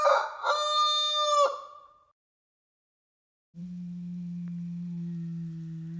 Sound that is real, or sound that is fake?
real